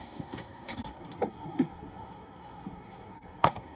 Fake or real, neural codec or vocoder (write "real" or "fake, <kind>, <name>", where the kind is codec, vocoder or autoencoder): fake, codec, SNAC